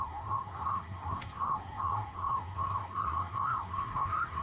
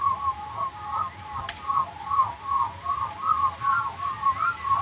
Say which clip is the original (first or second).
second